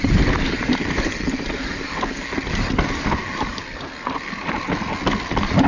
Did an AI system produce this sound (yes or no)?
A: no